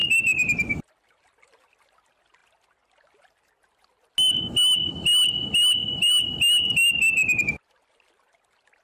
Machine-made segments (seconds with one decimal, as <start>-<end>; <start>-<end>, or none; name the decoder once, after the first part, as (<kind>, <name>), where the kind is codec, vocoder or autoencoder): 0.0-1.7 (vocoder, BigVGAN v2); 5.8-6.3